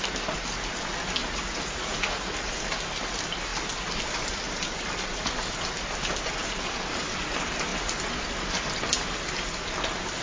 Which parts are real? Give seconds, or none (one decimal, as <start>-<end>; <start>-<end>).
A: 0.0-1.2; 2.3-10.2